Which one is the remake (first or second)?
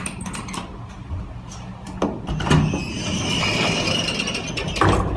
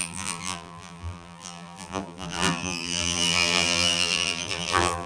second